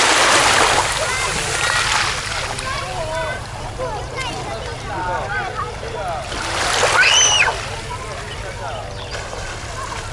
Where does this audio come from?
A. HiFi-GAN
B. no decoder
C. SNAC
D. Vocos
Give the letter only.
B